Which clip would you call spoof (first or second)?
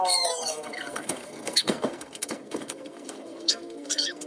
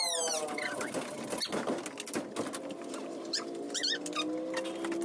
first